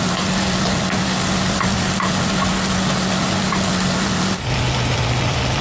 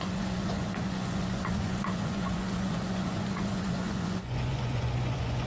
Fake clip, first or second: second